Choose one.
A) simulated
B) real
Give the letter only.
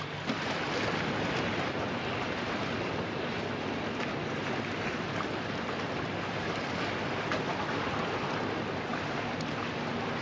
B